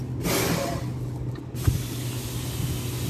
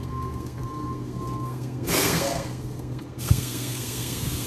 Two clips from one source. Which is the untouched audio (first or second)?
first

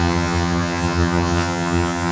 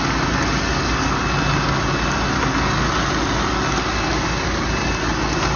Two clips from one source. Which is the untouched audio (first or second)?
second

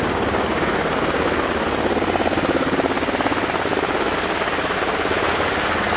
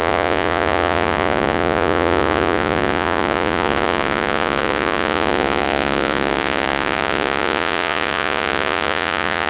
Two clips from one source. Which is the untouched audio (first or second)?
first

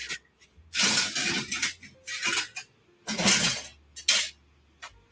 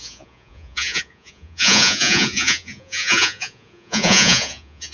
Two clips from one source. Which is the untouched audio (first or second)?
first